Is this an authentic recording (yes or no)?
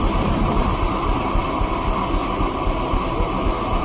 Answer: yes